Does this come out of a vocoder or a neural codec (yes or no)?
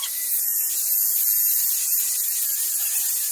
no